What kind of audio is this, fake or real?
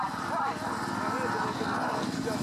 real